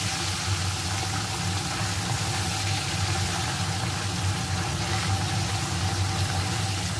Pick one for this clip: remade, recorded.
recorded